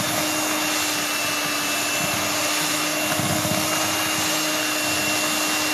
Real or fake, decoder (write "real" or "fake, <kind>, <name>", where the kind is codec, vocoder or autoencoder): real